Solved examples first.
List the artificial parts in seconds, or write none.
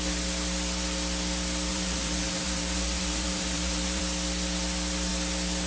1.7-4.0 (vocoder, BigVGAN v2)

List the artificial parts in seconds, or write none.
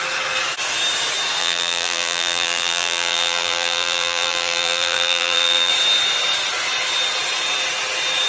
1.4-5.7 (vocoder, BigVGAN v2)